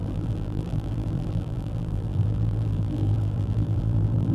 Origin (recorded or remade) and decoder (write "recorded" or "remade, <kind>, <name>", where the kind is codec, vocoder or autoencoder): remade, vocoder, BigVGAN v2